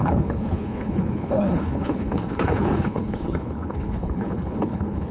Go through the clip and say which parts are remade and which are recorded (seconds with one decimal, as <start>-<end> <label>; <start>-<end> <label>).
0.0-5.1 remade

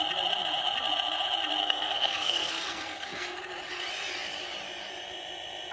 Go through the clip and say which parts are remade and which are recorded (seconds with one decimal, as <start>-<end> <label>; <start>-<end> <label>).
0.0-1.6 recorded; 1.6-3.4 remade; 3.4-5.7 recorded

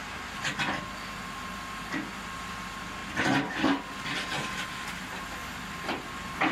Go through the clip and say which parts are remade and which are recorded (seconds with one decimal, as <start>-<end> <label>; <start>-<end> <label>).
0.0-0.5 remade; 0.5-6.5 recorded

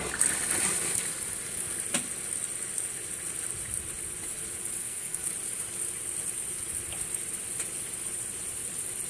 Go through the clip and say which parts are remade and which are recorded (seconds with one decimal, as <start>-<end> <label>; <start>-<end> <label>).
0.0-4.8 recorded; 4.8-5.3 remade; 5.3-9.1 recorded

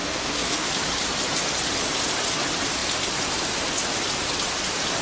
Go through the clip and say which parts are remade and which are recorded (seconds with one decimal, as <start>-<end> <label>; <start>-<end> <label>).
0.0-0.7 remade; 0.7-5.0 recorded

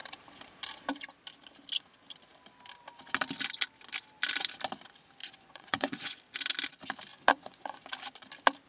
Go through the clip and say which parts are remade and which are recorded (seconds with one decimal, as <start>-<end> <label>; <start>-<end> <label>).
0.0-5.2 recorded; 5.2-6.2 remade; 6.2-7.1 recorded; 7.1-7.8 remade; 7.8-8.7 recorded